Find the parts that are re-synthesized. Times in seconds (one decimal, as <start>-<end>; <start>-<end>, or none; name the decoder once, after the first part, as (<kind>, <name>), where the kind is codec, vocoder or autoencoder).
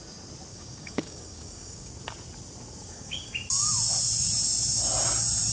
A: 0.5-1.9 (codec, DAC); 2.8-3.3